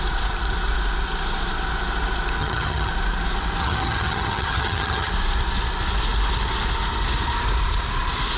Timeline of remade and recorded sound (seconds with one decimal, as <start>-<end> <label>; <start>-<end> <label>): 0.0-2.4 recorded; 2.4-2.9 remade; 2.9-3.6 recorded; 3.6-5.1 remade; 5.1-8.4 recorded